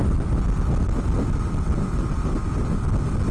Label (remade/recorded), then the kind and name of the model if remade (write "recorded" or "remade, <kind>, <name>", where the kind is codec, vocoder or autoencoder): recorded